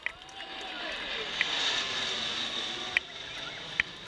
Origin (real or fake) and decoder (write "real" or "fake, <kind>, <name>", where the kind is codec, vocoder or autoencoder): real